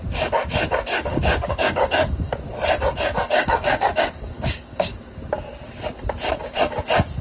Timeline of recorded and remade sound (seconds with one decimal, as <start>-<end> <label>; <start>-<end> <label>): 0.0-1.1 recorded; 1.1-2.3 remade; 2.3-3.1 recorded; 3.1-5.0 remade; 5.0-7.2 recorded